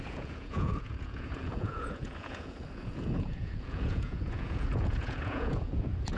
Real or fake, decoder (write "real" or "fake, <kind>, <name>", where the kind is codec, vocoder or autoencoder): fake, vocoder, Vocos